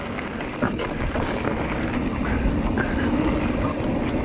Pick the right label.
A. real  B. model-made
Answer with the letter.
A